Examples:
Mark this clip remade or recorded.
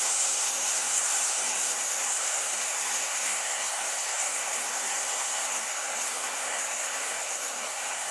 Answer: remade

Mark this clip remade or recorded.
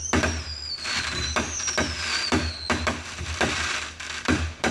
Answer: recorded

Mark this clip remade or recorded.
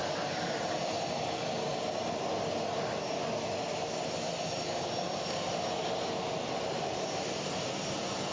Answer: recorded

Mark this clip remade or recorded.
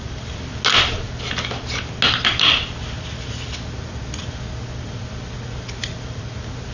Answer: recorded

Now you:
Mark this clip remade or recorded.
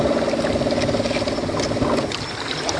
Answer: recorded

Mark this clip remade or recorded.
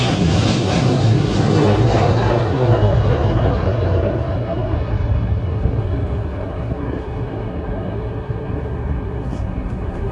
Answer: remade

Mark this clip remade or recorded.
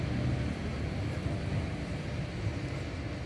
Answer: recorded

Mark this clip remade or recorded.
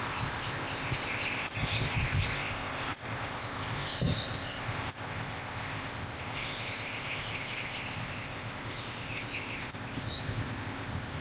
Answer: remade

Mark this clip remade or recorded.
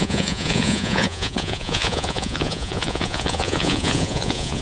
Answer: remade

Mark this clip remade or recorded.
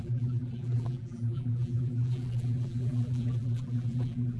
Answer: remade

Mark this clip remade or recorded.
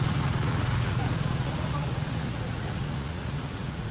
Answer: remade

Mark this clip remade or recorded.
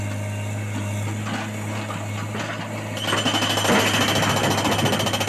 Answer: recorded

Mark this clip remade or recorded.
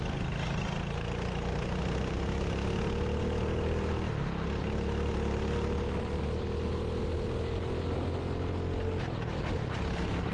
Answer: recorded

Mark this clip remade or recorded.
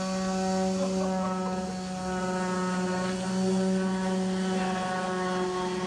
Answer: recorded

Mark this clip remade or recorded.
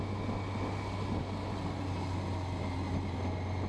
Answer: recorded